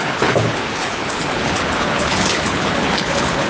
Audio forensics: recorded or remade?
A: remade